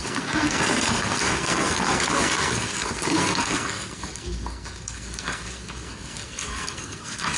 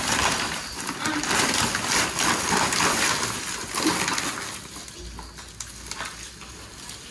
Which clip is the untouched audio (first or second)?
second